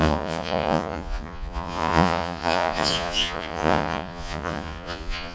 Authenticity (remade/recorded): remade